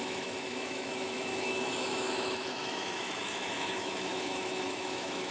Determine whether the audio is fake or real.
fake